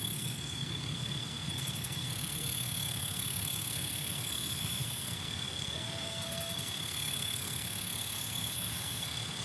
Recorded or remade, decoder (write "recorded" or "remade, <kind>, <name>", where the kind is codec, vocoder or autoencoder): remade, codec, SNAC